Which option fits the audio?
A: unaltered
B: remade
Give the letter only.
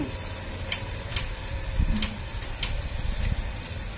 A